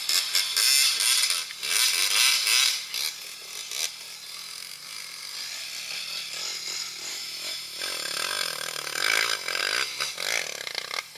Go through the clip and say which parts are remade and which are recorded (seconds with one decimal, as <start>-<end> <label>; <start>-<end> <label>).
0.0-7.1 recorded; 7.1-9.6 remade; 9.6-11.2 recorded